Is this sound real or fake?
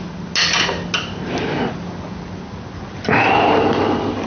real